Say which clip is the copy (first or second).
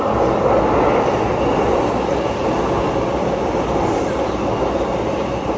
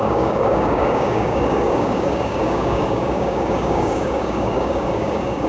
second